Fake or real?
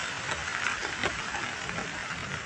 real